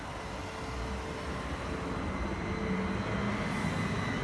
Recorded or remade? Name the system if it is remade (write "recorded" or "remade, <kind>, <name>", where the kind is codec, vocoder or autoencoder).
recorded